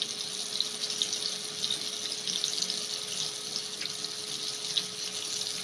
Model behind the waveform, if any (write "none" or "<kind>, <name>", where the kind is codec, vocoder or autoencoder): none